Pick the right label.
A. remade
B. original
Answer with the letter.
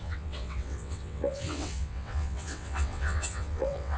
A